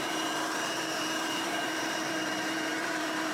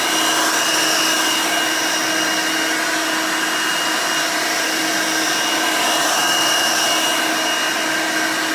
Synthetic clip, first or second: first